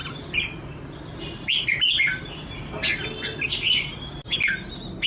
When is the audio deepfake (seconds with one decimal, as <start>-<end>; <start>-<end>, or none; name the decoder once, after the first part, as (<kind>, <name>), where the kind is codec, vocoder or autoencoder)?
none